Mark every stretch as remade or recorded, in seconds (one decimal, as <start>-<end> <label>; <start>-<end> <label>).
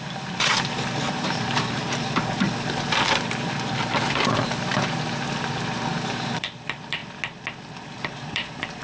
0.0-1.8 remade; 1.8-4.1 recorded; 4.1-7.0 remade; 7.0-7.7 recorded; 7.7-8.8 remade